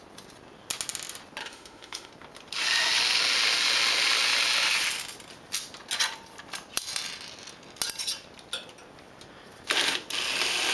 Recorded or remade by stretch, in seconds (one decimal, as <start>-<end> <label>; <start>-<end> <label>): 0.0-1.4 recorded; 1.4-2.1 remade; 2.1-10.7 recorded